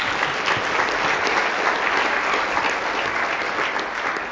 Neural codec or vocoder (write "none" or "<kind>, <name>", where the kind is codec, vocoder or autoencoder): none